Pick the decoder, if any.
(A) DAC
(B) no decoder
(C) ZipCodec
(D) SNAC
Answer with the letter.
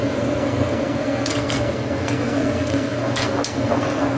D